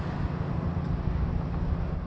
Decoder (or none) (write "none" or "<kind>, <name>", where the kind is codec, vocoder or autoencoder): none